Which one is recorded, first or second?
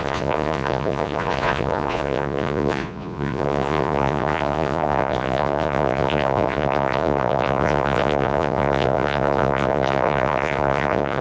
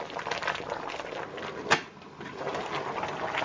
second